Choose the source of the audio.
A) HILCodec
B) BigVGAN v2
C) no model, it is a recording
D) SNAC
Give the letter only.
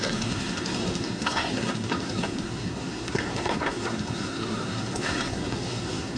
D